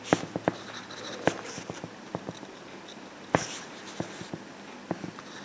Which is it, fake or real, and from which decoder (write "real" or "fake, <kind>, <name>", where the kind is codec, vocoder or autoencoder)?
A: real